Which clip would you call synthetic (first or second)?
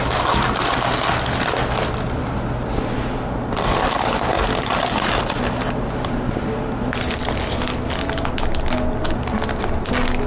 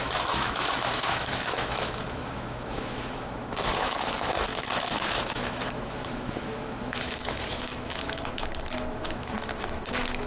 second